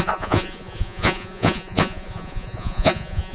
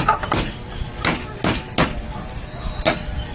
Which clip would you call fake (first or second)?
first